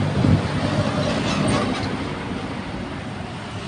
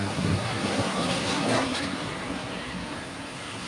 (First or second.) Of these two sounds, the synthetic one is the second